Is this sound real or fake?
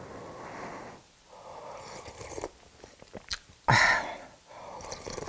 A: real